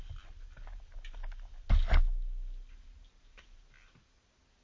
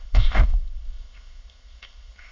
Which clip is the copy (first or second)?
second